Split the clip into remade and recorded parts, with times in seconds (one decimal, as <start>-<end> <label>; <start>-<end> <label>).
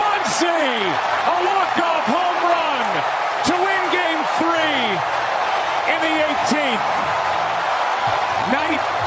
0.0-2.7 remade; 2.7-7.9 recorded; 7.9-9.1 remade